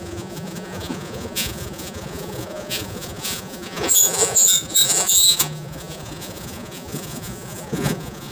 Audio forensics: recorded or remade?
remade